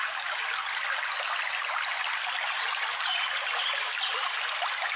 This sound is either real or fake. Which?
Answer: real